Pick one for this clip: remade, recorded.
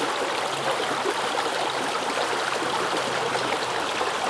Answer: recorded